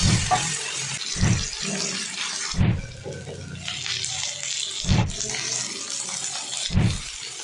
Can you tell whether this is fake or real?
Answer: real